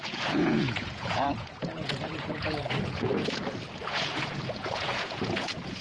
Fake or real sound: fake